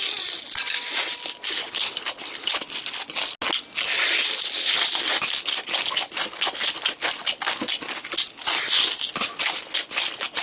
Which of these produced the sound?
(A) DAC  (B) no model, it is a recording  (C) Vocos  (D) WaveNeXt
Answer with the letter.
B